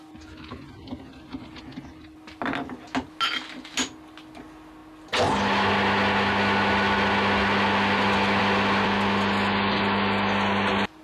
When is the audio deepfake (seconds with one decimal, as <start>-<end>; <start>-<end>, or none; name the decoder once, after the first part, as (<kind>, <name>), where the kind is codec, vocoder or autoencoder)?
none